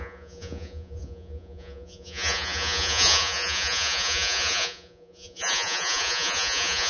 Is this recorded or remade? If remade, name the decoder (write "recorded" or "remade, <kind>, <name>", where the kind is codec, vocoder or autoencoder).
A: remade, vocoder, Vocos